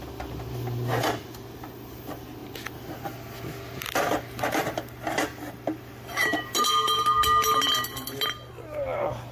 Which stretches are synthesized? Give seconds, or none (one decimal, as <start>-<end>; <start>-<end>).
none